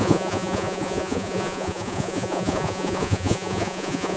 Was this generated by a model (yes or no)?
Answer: yes